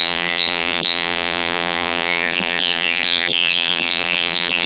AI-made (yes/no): yes